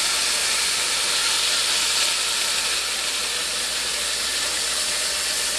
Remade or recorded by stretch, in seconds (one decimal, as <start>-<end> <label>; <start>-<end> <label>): 0.0-0.4 recorded; 0.4-0.9 remade; 0.9-5.6 recorded